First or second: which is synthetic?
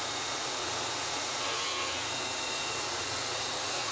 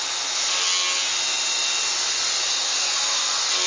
first